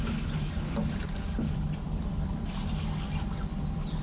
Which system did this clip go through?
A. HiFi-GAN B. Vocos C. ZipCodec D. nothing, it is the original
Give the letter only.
D